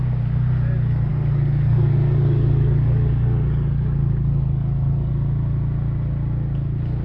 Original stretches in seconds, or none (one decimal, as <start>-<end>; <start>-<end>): 0.0-1.1; 5.1-7.0